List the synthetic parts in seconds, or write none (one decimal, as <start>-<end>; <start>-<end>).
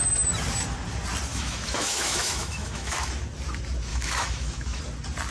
1.3-3.1; 3.9-4.8